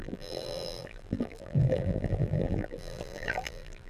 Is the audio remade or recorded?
remade